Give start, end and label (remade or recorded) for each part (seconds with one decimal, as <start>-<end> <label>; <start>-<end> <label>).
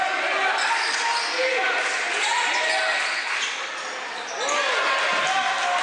0.0-5.8 recorded